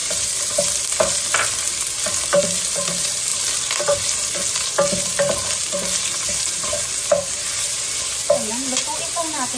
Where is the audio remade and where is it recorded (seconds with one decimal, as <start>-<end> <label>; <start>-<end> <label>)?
0.0-0.6 remade; 0.6-9.6 recorded

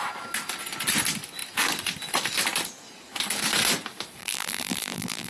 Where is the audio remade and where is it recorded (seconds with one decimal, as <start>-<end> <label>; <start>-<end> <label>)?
0.0-4.2 recorded; 4.2-5.3 remade

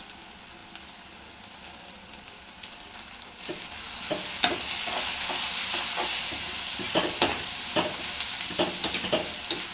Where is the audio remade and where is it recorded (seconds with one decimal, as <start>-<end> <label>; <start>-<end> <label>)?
0.0-9.7 recorded

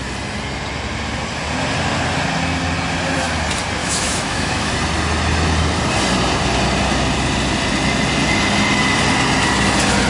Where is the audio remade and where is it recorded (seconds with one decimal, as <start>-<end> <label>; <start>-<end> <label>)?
0.0-3.8 recorded; 3.8-4.7 remade; 4.7-10.1 recorded

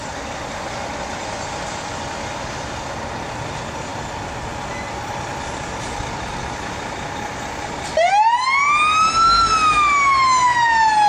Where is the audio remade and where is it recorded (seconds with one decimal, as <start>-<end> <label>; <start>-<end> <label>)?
0.0-11.1 recorded

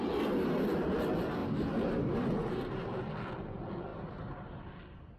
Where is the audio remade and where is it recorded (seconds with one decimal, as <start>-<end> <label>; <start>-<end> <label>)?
0.0-1.4 recorded; 1.4-3.0 remade; 3.0-3.9 recorded; 3.9-4.6 remade; 4.6-5.2 recorded

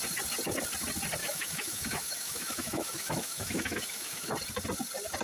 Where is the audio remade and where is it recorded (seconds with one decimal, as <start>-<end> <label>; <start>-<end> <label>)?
0.0-1.2 recorded; 1.2-4.3 remade; 4.3-5.2 recorded